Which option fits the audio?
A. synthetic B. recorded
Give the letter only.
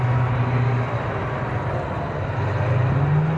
B